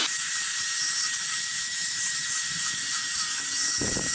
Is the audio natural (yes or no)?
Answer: no